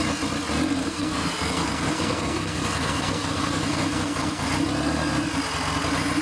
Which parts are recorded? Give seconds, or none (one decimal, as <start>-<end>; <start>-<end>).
0.0-0.8; 4.5-6.2